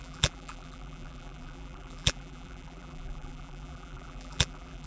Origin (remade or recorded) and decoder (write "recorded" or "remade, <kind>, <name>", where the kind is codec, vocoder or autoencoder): remade, vocoder, BigVGAN v2